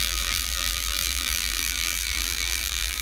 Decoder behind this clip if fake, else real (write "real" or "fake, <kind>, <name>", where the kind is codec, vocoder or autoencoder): fake, vocoder, BigVGAN v2